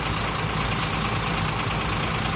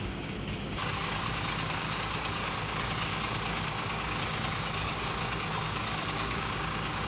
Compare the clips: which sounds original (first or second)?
first